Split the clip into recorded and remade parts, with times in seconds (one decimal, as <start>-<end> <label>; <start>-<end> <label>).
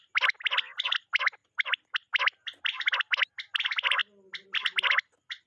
0.0-5.5 recorded